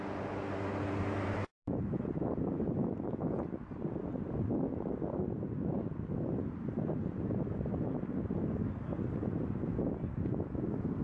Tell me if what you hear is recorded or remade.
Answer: recorded